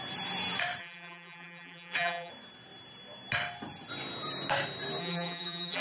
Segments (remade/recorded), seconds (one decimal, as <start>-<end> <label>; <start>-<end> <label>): 0.0-0.8 recorded; 0.8-2.3 remade; 2.3-5.0 recorded; 5.0-5.8 remade